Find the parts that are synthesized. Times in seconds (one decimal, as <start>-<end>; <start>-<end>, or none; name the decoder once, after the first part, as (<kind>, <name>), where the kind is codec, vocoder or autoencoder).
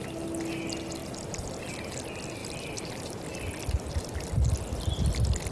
2.4-3.2 (vocoder, BigVGAN v2)